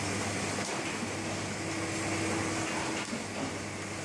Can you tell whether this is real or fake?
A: real